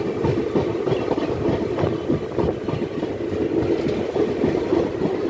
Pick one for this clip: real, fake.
real